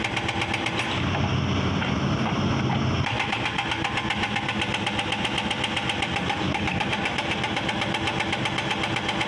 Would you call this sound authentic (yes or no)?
yes